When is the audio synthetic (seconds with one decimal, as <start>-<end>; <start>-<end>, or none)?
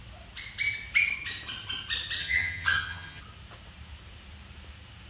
2.2-3.2